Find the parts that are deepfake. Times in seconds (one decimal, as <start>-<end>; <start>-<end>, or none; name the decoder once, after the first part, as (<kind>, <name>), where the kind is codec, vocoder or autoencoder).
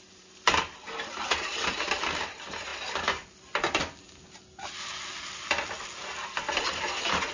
0.0-2.7 (vocoder, BigVGAN v2)